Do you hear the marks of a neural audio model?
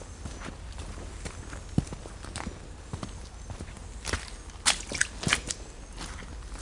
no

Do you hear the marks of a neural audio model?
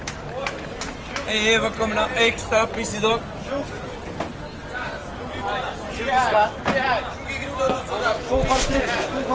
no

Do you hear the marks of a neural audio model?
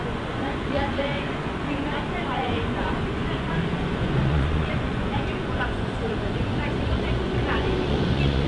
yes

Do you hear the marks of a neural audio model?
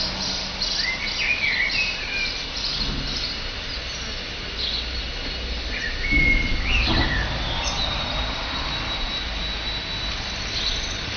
no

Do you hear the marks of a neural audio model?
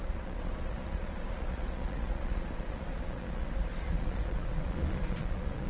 yes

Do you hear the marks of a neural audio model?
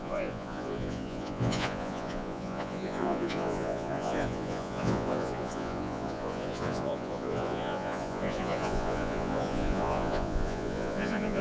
yes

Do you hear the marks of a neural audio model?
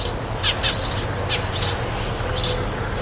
no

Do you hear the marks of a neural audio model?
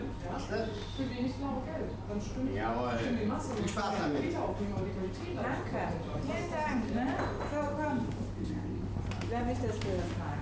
no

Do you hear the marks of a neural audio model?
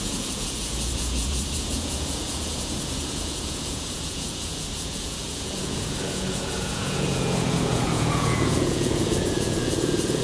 yes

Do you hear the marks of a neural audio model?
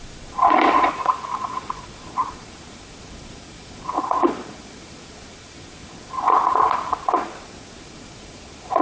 yes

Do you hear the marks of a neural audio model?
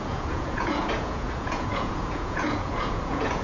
yes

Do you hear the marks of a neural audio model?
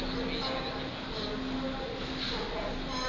no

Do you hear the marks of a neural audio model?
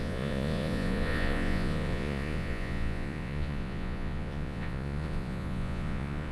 yes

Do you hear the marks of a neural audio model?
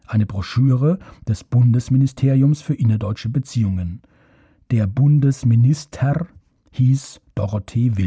no